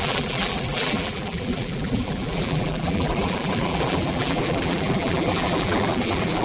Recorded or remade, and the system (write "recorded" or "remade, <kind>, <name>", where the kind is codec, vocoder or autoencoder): remade, vocoder, BigVGAN v2